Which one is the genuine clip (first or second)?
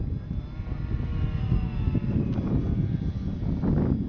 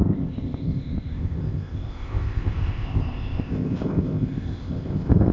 first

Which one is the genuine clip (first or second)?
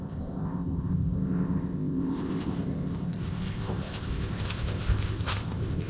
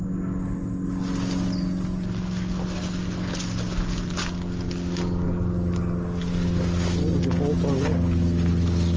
second